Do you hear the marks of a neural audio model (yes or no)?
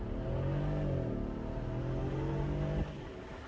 no